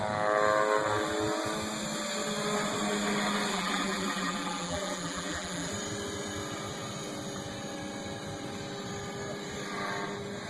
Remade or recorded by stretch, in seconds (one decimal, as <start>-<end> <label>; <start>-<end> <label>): 0.0-3.5 recorded; 3.5-5.7 remade; 5.7-10.5 recorded